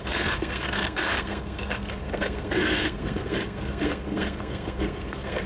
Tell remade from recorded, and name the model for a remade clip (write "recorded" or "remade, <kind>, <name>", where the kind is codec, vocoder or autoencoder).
remade, codec, SNAC